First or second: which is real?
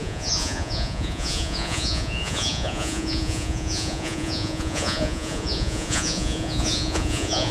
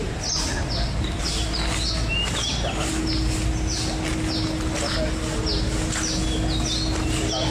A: second